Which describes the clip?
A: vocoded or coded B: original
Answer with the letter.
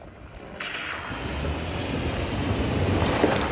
B